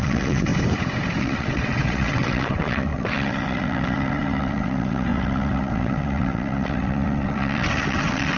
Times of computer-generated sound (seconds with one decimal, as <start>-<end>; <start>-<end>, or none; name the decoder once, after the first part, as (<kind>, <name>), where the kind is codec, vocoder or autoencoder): 0.0-0.5 (vocoder, WaveNeXt); 1.2-8.4